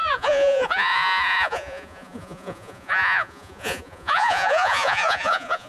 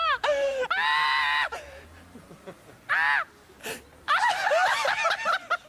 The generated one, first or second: first